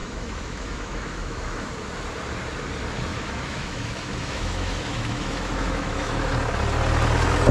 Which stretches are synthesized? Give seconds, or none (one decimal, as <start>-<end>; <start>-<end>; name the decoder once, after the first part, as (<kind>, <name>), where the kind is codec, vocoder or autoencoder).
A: 0.0-1.7 (autoencoder, DAC-VAE); 3.1-6.3